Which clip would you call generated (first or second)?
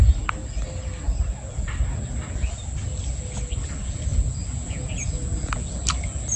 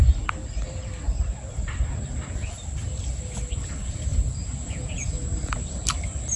second